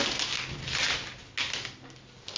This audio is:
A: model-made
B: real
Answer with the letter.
B